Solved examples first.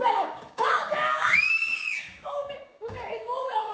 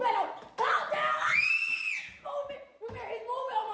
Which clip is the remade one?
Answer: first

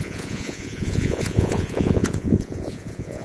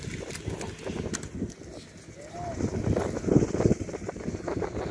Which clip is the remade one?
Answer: first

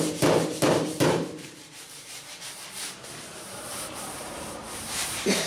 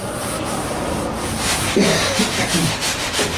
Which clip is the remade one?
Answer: first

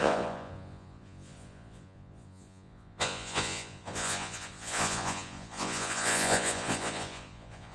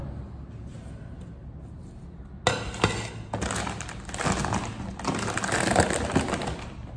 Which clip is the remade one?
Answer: first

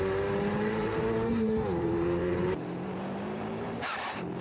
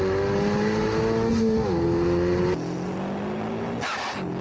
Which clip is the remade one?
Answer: first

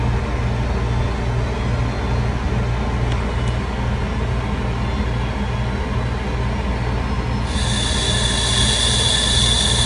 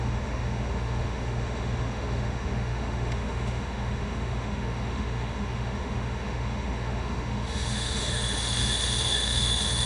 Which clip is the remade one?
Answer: second